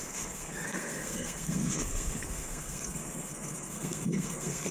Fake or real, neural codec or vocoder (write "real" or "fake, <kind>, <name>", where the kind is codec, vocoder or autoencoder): fake, codec, SNAC